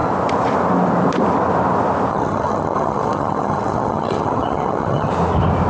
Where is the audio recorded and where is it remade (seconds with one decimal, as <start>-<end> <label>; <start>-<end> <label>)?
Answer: 0.0-2.1 recorded; 2.1-5.1 remade; 5.1-5.7 recorded